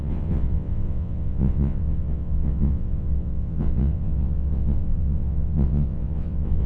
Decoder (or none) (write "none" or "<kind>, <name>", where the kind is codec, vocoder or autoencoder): vocoder, WaveNeXt